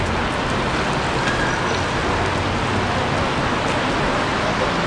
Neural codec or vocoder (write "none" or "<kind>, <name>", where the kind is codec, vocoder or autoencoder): none